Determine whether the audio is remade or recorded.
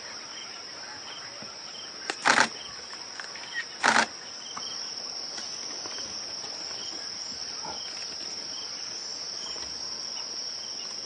recorded